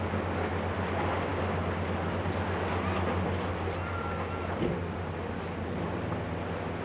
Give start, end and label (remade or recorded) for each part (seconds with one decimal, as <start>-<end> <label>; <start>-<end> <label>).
0.0-6.8 recorded